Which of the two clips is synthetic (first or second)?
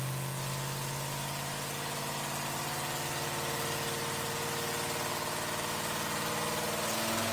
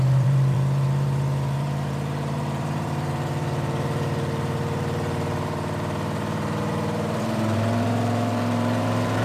second